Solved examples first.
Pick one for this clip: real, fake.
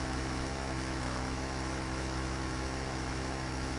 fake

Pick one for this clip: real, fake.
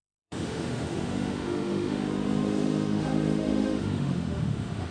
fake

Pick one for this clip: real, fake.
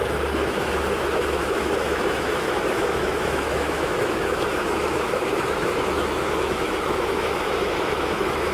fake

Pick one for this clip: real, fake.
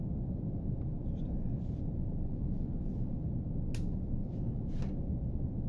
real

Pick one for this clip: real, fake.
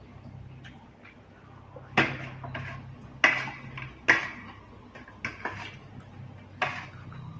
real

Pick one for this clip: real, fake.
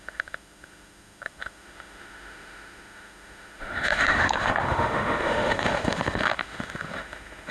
fake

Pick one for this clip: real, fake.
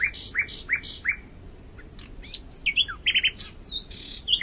real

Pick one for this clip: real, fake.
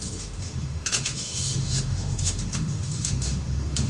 fake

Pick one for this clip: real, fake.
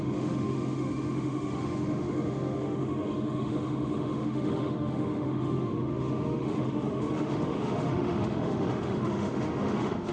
fake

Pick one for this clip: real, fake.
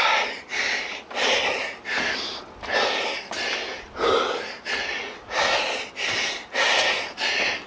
real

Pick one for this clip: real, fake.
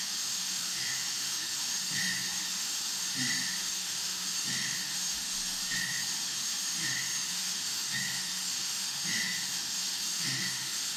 fake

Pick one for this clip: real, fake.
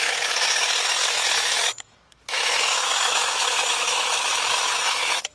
fake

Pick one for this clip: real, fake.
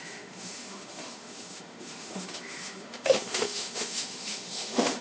fake